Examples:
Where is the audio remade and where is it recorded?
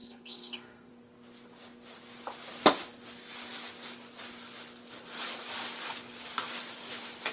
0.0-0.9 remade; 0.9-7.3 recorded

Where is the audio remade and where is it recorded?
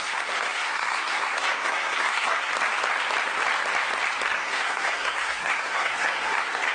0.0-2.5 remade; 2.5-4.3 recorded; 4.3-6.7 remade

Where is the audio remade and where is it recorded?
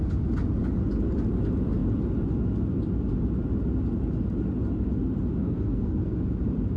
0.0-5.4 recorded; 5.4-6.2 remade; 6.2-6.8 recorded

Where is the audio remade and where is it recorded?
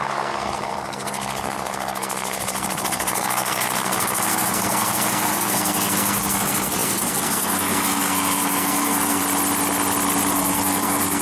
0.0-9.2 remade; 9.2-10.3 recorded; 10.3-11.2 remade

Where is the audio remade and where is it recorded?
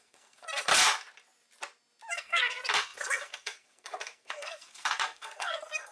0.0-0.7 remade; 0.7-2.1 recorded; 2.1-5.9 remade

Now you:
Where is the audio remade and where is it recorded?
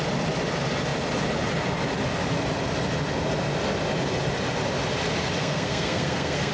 0.0-5.4 recorded; 5.4-6.5 remade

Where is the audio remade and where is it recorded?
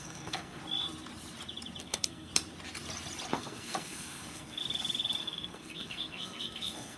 0.0-0.6 remade; 0.6-1.8 recorded; 1.8-2.3 remade; 2.3-3.3 recorded; 3.3-4.6 remade; 4.6-5.2 recorded; 5.2-7.0 remade